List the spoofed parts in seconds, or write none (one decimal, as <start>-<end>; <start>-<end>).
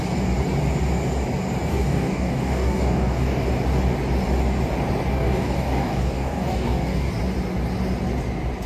1.7-3.5; 5.1-7.1